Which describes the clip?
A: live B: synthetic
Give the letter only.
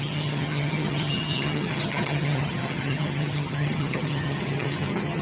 B